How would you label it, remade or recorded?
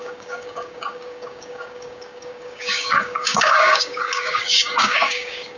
remade